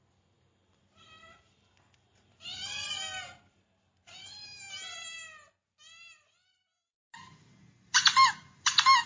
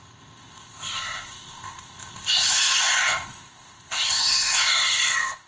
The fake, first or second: second